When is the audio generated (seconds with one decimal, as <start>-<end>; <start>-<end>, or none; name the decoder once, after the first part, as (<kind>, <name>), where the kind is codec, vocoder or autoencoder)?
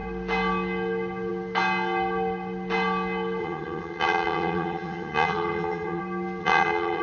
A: 3.4-6.0 (vocoder, HiFi-GAN); 6.4-7.0